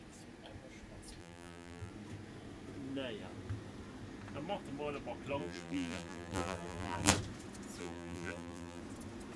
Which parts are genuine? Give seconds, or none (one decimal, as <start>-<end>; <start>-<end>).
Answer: 0.0-1.2; 1.9-5.4; 7.1-7.8; 8.8-9.4